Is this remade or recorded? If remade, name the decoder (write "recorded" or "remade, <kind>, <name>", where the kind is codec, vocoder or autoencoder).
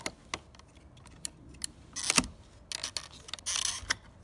recorded